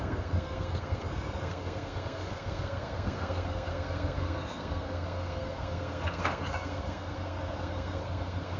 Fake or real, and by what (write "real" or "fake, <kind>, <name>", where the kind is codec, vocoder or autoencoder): fake, codec, SNAC